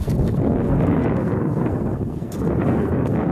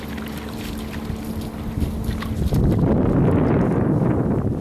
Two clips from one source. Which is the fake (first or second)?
first